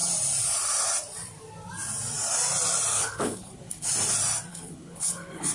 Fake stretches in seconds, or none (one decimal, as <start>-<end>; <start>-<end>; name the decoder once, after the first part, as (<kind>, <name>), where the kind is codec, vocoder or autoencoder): 2.9-3.9 (codec, HILCodec); 4.5-5.5

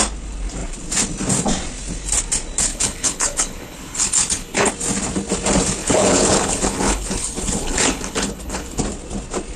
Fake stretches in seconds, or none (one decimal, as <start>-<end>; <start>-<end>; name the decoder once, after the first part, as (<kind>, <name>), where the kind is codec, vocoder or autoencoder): 2.7-4.7 (codec, HILCodec); 5.8-8.8

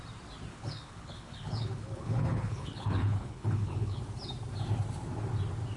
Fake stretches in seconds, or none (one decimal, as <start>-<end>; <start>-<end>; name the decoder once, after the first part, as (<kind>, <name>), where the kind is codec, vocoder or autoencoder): 0.5-4.0 (codec, HILCodec)

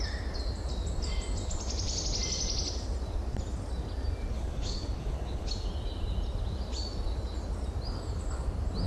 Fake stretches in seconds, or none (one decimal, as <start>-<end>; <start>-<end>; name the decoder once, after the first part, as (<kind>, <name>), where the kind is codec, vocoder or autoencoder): 4.3-5.5 (codec, HILCodec)

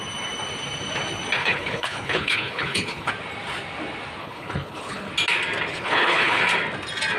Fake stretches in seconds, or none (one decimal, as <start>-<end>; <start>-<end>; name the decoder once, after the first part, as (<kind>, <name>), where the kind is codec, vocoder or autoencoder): 1.4-3.1 (codec, HILCodec); 4.2-5.1; 5.7-6.4

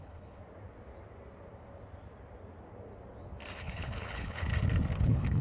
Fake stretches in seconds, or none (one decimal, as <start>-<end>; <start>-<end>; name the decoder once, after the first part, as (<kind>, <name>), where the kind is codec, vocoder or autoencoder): 0.0-0.4 (codec, HILCodec); 3.6-4.5; 5.0-5.4

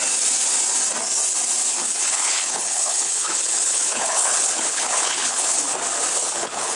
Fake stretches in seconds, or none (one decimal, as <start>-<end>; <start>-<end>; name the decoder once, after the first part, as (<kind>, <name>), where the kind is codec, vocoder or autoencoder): 1.7-5.6 (codec, HILCodec); 6.2-6.8